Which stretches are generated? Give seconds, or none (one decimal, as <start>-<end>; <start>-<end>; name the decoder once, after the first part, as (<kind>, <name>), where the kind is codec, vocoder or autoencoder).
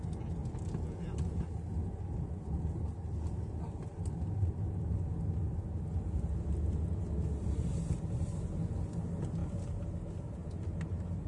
none